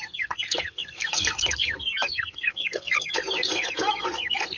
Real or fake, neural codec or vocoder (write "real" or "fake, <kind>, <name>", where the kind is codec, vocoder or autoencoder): fake, codec, SNAC